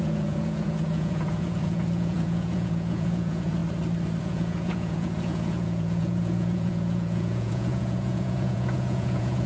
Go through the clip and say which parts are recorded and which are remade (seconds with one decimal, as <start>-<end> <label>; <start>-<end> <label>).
0.0-3.6 remade; 3.6-4.2 recorded; 4.2-9.5 remade